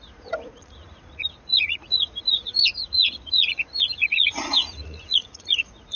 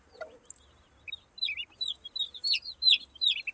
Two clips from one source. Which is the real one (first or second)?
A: second